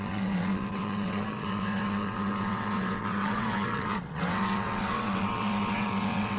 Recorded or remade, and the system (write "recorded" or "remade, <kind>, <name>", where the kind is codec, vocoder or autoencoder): remade, vocoder, WaveNeXt